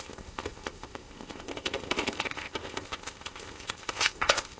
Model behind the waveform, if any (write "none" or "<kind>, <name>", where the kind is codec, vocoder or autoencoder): codec, ZipCodec